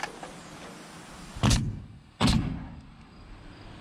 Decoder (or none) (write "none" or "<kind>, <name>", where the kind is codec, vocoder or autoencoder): none